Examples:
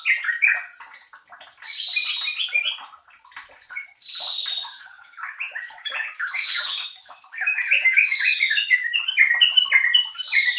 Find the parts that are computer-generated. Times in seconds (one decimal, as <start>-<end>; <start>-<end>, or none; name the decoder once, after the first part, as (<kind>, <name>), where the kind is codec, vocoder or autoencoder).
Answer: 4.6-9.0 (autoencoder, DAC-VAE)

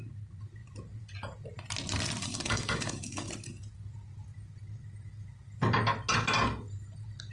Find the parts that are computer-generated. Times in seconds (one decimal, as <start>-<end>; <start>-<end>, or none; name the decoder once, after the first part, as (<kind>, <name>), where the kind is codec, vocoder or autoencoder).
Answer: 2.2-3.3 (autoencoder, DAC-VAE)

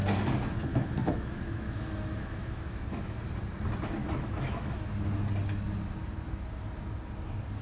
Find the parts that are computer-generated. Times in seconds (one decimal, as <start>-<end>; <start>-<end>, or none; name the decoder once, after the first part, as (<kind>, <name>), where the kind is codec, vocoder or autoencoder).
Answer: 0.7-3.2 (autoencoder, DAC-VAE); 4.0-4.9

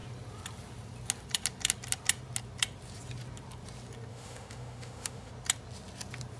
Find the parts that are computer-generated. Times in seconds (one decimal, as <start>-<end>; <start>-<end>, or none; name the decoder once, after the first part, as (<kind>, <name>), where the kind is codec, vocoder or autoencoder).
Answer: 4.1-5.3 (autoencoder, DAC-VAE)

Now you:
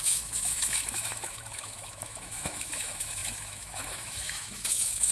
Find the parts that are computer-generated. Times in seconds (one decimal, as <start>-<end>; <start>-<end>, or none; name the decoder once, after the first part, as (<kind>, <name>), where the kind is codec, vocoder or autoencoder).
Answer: 0.0-5.1 (autoencoder, DAC-VAE)

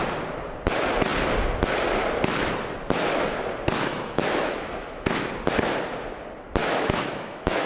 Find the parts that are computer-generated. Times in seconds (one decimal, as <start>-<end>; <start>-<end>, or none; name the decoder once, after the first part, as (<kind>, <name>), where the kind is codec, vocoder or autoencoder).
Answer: 3.9-5.3 (autoencoder, DAC-VAE); 6.6-7.7

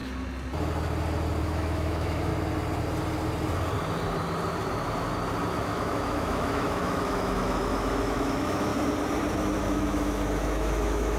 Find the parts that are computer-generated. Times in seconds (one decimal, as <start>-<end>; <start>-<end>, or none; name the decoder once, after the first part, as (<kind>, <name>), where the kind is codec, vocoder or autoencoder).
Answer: 1.4-2.3 (autoencoder, DAC-VAE); 5.6-8.7; 9.6-11.2